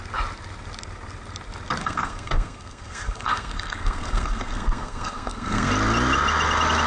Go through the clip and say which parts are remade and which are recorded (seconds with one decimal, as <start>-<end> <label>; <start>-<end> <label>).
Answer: 0.0-1.8 recorded; 1.8-5.7 remade; 5.7-6.9 recorded